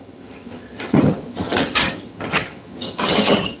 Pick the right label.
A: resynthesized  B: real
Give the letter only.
A